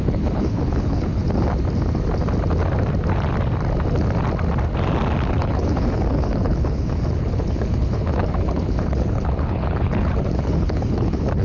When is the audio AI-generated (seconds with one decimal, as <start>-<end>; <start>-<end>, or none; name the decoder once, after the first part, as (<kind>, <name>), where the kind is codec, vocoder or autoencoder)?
0.0-1.2 (codec, HILCodec); 5.4-11.4